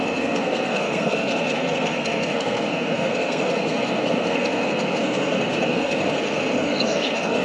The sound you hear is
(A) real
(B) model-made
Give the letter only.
B